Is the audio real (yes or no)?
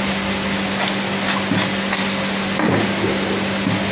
yes